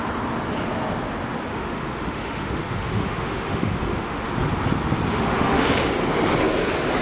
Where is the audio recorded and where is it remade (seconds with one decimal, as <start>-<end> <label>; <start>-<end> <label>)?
0.0-1.5 recorded; 1.5-4.3 remade; 4.3-5.1 recorded; 5.1-5.9 remade; 5.9-7.0 recorded